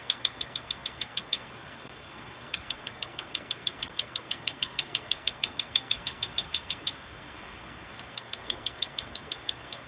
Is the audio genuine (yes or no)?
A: no